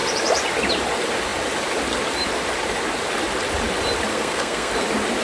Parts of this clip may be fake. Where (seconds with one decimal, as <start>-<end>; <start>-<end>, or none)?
4.1-4.7